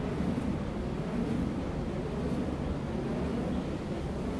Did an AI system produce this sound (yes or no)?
no